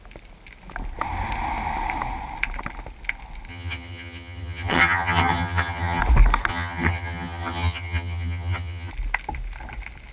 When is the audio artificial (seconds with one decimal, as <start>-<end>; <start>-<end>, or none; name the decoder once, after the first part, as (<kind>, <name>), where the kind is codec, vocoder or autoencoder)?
3.5-6.0 (vocoder, HiFi-GAN); 6.5-8.9